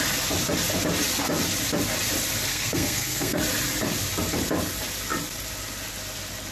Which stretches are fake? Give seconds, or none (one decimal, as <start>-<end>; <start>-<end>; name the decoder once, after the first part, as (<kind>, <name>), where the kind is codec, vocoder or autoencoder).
2.5-3.4 (codec, SNAC)